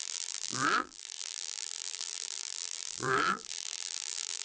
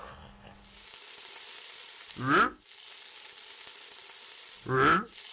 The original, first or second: second